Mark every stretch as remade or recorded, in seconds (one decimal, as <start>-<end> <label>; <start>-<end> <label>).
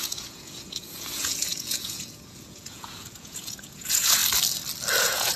0.0-4.2 remade; 4.2-5.0 recorded; 5.0-5.4 remade